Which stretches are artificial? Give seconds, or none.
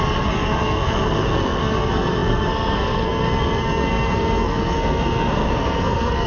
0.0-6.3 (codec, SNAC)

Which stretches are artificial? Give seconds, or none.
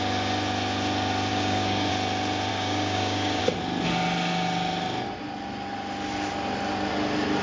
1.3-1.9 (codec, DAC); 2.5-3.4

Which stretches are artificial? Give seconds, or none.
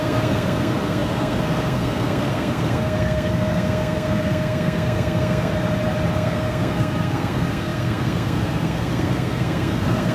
0.0-5.5 (codec, SNAC); 6.1-10.1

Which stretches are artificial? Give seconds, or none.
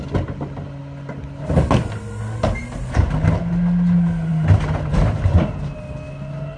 none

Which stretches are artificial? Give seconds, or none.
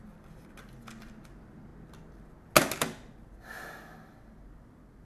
none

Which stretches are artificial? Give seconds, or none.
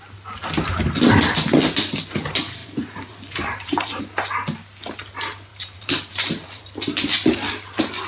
2.6-4.0 (vocoder, BigVGAN v2); 5.5-6.6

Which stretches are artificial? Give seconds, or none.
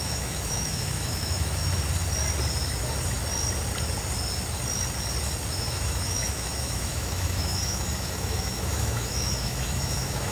0.0-1.6 (autoencoder, DAC-VAE); 5.5-10.3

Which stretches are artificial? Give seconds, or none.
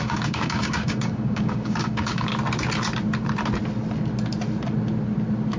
0.0-2.3 (codec, DAC)